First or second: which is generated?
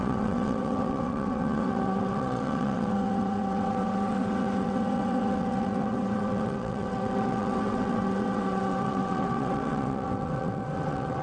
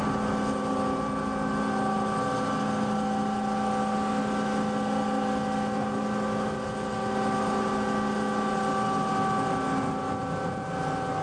first